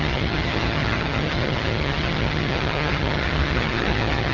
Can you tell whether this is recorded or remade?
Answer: remade